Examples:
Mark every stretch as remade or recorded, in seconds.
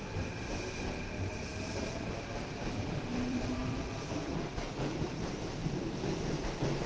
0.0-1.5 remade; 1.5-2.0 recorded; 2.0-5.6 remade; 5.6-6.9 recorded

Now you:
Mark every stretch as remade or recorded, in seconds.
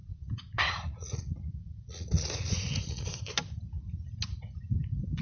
0.0-3.1 remade; 3.1-5.2 recorded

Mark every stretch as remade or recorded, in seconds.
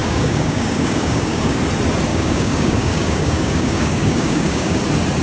0.0-1.6 remade; 1.6-2.1 recorded; 2.1-4.8 remade; 4.8-5.2 recorded